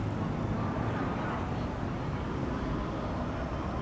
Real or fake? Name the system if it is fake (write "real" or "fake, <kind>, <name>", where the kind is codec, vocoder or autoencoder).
real